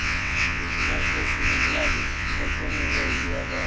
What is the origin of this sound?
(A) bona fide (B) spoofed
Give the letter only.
B